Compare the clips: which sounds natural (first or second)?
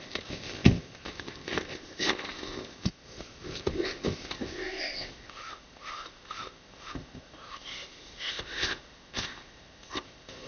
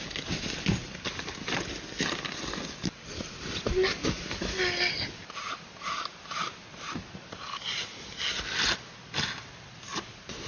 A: second